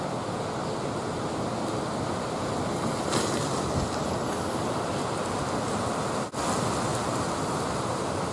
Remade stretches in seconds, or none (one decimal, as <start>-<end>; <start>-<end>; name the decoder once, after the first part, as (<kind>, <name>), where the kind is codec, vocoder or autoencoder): none